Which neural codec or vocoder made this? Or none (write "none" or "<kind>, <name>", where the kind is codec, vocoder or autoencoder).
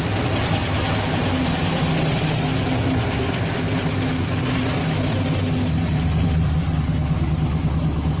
none